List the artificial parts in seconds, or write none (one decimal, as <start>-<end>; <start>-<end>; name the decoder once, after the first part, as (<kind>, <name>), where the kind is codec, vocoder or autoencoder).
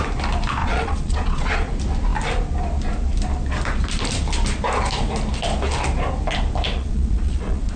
0.6-1.7 (vocoder, Vocos); 6.7-7.8